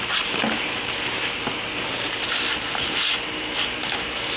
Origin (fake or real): real